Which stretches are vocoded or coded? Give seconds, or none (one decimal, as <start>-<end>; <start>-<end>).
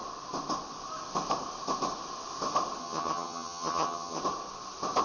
2.8-4.2